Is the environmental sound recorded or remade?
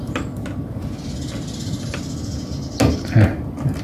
recorded